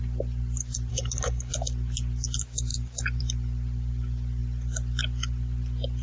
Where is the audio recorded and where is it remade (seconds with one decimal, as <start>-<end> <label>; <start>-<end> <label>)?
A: 0.0-0.9 recorded; 0.9-1.5 remade; 1.5-6.0 recorded